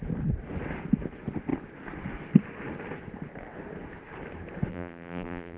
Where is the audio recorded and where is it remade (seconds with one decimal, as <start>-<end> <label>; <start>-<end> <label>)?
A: 0.0-4.7 recorded; 4.7-5.6 remade